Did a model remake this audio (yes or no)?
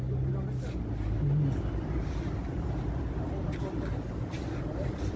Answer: no